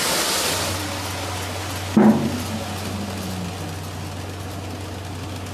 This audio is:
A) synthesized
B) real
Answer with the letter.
B